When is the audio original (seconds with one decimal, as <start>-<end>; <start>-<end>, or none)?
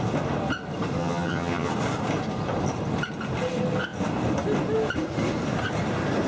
0.0-1.0; 1.7-6.3